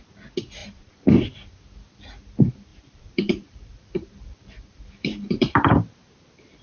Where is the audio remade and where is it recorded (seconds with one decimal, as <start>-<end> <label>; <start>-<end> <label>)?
0.0-0.6 recorded; 0.6-1.5 remade; 1.5-2.7 recorded; 2.7-5.5 remade; 5.5-6.6 recorded

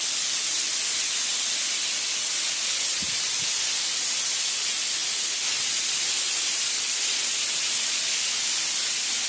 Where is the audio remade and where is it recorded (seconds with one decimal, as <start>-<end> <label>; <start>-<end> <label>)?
0.0-9.3 recorded

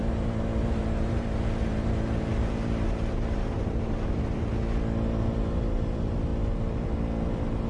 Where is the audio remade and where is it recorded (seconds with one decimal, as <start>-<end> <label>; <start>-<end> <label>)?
0.0-4.4 remade; 4.4-7.7 recorded

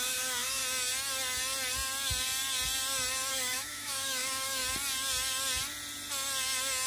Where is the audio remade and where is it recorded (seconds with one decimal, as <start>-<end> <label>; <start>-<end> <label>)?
0.0-0.6 remade; 0.6-3.3 recorded; 3.3-4.6 remade; 4.6-6.9 recorded

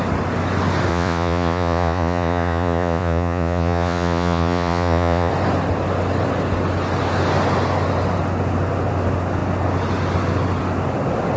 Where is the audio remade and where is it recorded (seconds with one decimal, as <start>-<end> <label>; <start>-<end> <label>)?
0.0-0.9 recorded; 0.9-5.3 remade; 5.3-11.4 recorded

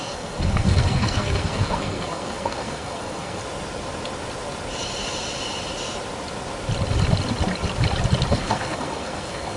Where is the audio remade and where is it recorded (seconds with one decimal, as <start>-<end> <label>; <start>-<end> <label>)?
0.0-3.4 remade; 3.4-8.3 recorded; 8.3-9.6 remade

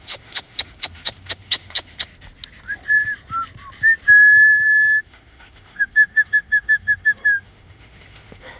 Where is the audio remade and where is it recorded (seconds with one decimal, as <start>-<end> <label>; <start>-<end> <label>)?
0.0-2.1 remade; 2.1-5.0 recorded; 5.0-8.6 remade